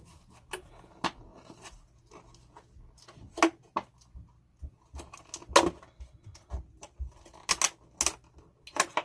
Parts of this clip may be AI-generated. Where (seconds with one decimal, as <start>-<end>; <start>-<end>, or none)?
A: none